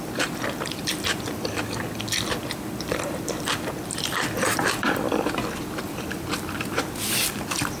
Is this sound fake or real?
fake